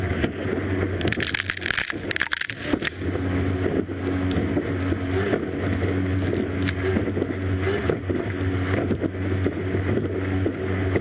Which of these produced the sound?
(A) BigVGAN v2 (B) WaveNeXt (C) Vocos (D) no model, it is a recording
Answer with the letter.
D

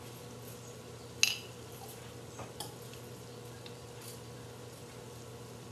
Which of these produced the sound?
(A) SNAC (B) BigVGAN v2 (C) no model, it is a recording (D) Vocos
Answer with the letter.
C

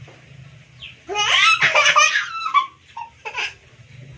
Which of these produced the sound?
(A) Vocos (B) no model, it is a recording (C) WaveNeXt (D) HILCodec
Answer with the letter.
B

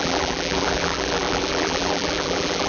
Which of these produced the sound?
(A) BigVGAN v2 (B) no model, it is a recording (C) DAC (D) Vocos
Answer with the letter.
A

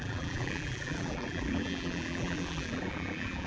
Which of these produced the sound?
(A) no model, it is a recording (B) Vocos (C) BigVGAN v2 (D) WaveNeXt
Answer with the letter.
C